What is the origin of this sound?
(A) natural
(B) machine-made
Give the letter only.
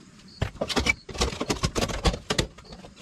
A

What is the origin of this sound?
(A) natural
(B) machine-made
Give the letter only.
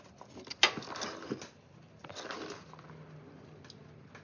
A